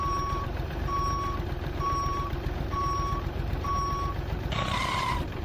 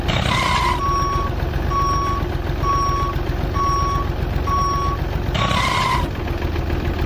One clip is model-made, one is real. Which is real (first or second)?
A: second